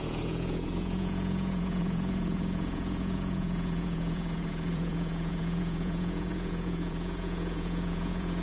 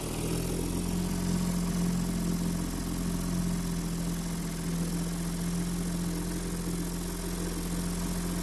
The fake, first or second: first